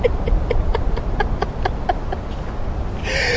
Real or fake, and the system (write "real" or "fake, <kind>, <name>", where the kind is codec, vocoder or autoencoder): real